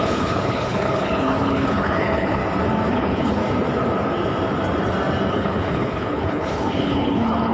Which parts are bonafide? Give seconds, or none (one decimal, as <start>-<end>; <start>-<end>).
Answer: 2.4-2.9; 3.4-5.3